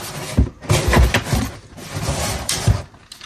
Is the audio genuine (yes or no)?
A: yes